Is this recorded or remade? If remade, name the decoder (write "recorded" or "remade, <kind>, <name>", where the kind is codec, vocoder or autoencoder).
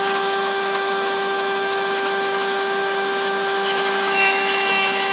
remade, autoencoder, DAC-VAE